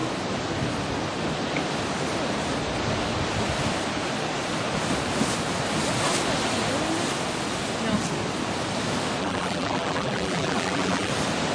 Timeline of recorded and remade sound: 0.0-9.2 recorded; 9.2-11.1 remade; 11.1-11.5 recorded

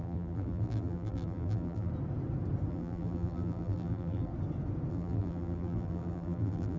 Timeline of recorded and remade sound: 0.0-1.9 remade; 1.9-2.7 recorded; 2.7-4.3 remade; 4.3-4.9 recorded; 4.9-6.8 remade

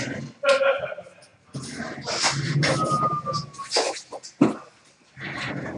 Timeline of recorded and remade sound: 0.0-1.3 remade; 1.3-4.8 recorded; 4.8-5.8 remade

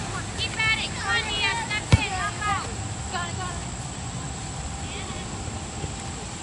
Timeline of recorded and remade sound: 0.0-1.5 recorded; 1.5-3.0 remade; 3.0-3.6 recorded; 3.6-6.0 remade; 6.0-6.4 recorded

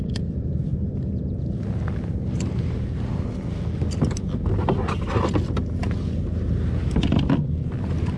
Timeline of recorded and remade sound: 0.0-8.2 recorded